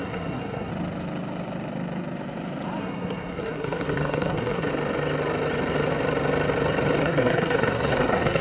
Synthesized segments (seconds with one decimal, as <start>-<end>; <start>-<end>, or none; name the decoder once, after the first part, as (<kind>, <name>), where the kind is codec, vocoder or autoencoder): 0.0-0.7 (codec, SNAC); 2.8-4.7; 7.0-8.4